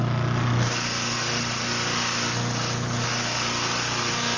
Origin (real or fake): real